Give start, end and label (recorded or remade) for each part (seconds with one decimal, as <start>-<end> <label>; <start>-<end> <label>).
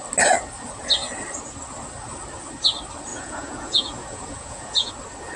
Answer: 0.0-3.1 recorded; 3.1-4.9 remade; 4.9-5.4 recorded